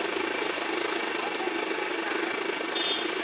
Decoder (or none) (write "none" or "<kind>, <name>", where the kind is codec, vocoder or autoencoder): none